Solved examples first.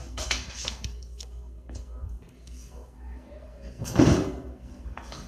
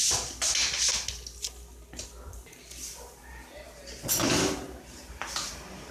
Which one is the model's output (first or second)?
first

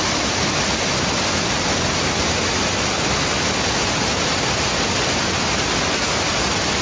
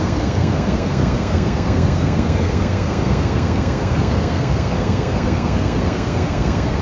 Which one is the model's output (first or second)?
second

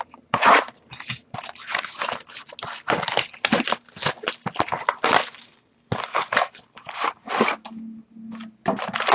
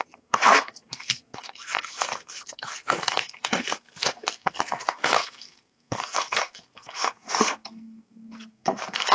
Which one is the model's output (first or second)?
second